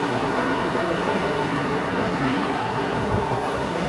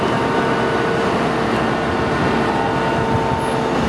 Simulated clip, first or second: first